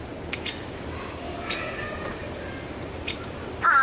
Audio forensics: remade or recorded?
recorded